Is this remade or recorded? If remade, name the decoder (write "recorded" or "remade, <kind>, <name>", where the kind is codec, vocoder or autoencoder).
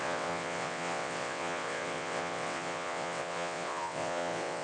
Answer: remade, vocoder, WaveNeXt